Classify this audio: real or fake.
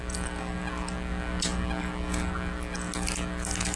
real